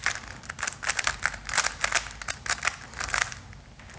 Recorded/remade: recorded